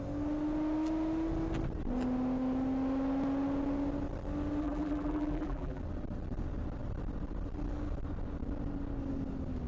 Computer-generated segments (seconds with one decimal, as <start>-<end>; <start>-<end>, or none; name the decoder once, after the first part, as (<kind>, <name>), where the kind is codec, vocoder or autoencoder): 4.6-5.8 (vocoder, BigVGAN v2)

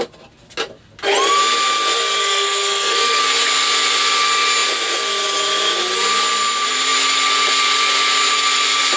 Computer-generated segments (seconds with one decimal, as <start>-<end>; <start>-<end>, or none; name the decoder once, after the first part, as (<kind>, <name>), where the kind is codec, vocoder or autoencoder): 2.2-3.2 (codec, SNAC)

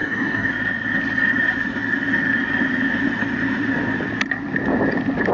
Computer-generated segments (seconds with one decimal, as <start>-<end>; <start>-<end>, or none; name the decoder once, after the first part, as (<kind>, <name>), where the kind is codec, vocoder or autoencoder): 0.0-0.5 (codec, DAC)

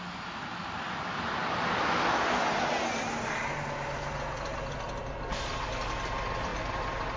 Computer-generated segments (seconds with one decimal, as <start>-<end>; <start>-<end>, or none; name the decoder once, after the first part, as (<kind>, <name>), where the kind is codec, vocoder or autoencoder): none

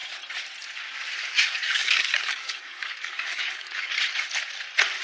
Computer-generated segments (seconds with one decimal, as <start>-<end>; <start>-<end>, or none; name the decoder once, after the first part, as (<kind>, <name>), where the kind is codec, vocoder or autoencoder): 1.2-3.9 (codec, DAC)

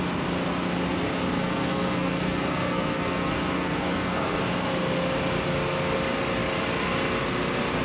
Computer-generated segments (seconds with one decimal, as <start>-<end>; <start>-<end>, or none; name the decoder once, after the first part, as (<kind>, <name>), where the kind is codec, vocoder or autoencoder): 1.4-4.4 (codec, SNAC)